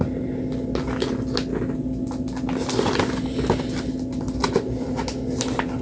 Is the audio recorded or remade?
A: recorded